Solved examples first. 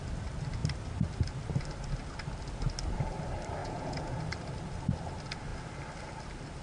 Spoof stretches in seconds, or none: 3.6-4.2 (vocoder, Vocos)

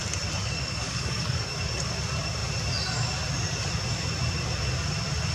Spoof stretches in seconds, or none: 0.4-1.7 (codec, DAC)

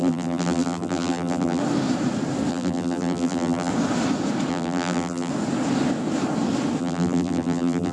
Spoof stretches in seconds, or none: 0.0-1.6 (vocoder, BigVGAN v2); 2.5-3.7; 4.5-5.3; 6.8-7.9

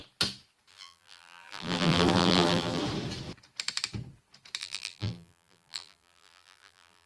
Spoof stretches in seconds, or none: 0.7-2.8 (vocoder, BigVGAN v2); 4.6-7.1

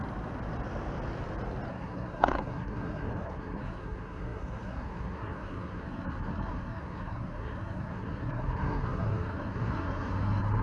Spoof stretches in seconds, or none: 1.7-10.6 (codec, SNAC)

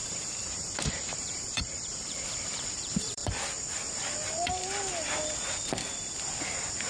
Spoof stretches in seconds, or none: 0.0-4.9 (vocoder, BigVGAN v2)